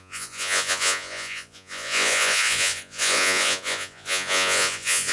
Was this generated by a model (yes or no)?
yes